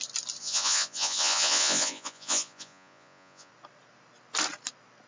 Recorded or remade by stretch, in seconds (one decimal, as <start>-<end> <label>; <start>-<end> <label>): 0.0-0.4 recorded; 0.4-3.5 remade; 3.5-5.1 recorded